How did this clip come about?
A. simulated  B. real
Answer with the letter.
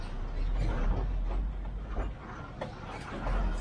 B